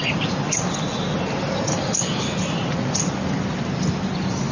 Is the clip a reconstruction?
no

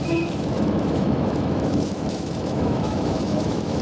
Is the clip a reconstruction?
yes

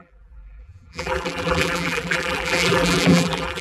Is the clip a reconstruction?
yes